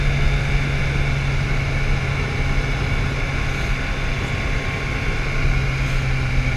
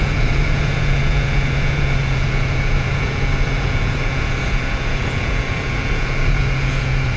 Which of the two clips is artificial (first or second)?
second